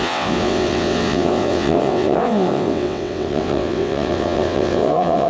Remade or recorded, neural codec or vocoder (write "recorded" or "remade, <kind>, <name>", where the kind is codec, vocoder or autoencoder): remade, vocoder, WaveNeXt